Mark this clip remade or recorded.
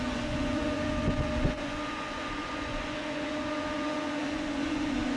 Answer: remade